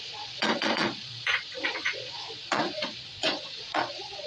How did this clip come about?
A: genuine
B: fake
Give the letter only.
B